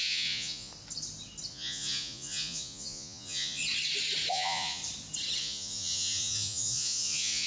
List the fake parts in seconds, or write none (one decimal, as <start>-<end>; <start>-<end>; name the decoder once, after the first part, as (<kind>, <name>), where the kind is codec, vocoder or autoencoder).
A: 0.0-0.7 (vocoder, Vocos); 1.5-3.6; 4.3-4.8; 5.4-7.5